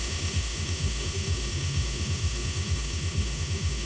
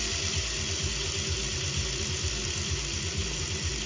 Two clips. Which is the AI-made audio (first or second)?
first